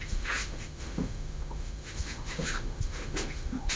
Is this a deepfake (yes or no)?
yes